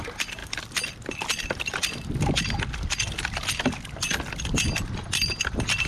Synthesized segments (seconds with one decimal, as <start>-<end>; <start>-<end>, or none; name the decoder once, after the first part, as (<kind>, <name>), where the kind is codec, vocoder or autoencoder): none